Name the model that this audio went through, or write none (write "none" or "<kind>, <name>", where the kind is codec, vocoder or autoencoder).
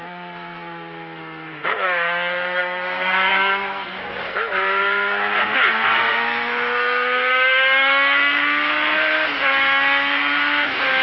codec, SNAC